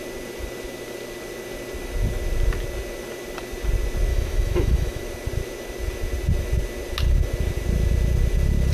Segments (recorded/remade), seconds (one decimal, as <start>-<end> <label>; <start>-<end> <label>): 0.0-4.1 recorded; 4.1-5.0 remade; 5.0-8.7 recorded